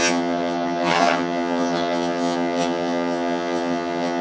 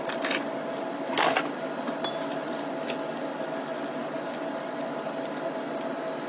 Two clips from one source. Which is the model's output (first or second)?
first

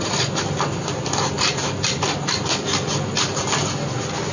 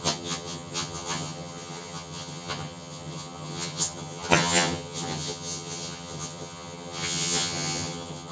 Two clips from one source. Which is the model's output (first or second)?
second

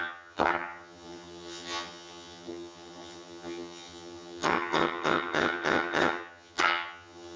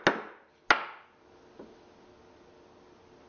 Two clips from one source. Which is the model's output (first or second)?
first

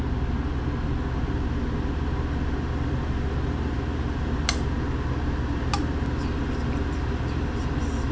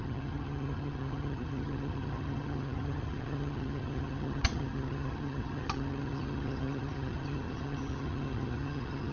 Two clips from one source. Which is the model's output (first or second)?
second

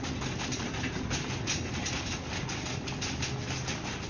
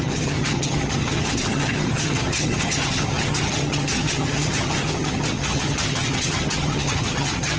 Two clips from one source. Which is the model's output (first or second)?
second